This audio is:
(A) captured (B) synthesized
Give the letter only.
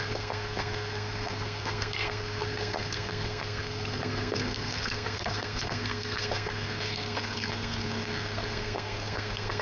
B